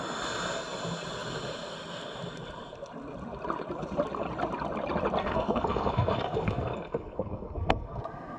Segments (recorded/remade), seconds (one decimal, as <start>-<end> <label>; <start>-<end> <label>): 0.0-5.2 recorded; 5.2-8.0 remade; 8.0-8.4 recorded